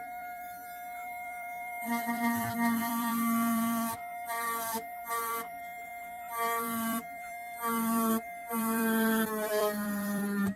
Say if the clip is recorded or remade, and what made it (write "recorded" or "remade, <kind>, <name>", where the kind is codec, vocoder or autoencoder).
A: remade, vocoder, BigVGAN v2